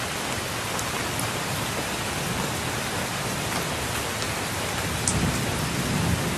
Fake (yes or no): no